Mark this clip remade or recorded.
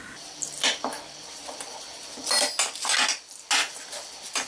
recorded